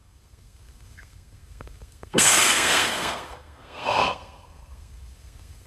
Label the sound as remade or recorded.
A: remade